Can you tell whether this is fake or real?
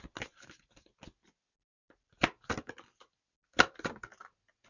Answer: real